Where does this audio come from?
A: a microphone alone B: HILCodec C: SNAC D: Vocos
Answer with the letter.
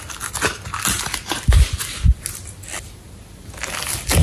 A